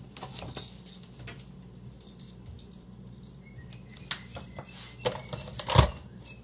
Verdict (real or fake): real